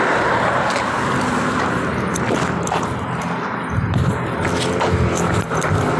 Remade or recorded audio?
recorded